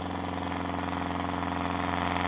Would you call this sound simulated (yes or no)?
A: no